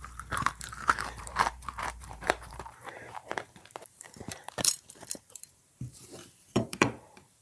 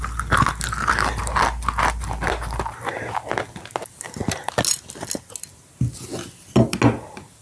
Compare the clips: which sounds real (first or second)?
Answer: second